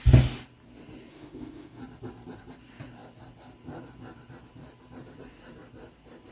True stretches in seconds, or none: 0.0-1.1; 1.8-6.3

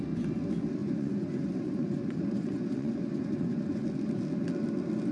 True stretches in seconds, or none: 0.0-0.8; 3.9-5.1

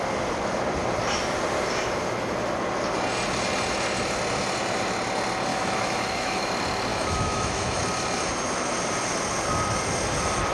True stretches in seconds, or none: 0.0-5.5; 6.5-6.9; 7.8-10.5

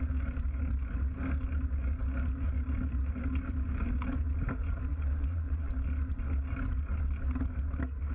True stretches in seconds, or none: 0.0-4.9; 5.7-8.1

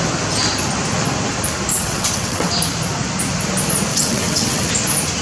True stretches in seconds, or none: 0.0-1.7; 2.5-3.9; 4.7-5.2